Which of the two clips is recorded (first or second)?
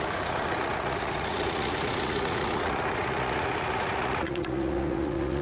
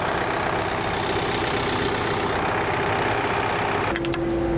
second